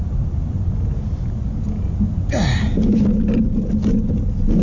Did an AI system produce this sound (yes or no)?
no